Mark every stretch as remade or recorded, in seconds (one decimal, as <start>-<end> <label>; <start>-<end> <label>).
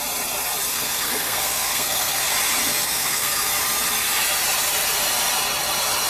0.0-0.7 recorded; 0.7-2.3 remade; 2.3-2.7 recorded; 2.7-3.5 remade; 3.5-6.1 recorded